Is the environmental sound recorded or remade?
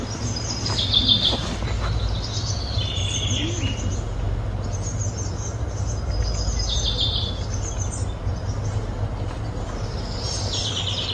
recorded